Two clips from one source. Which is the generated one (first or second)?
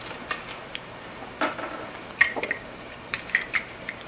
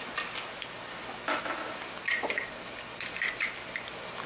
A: first